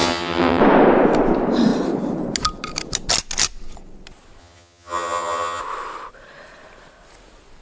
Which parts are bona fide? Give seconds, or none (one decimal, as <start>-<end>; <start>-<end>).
0.6-4.4; 5.6-7.6